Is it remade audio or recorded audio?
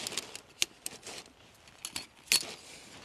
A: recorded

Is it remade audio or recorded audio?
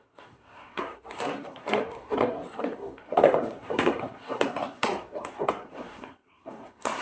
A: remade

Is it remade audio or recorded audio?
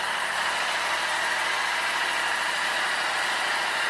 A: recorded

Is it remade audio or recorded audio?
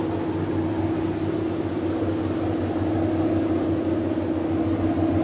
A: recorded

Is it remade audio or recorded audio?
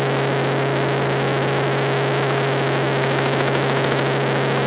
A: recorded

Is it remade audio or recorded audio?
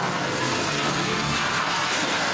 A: remade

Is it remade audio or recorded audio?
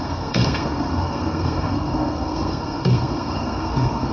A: remade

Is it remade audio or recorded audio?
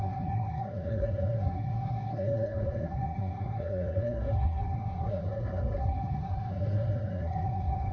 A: remade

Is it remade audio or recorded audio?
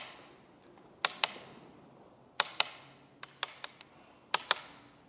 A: recorded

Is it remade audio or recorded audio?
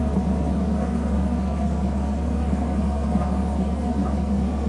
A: remade